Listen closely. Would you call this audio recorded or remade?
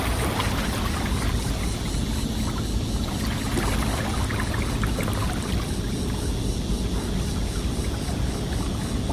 recorded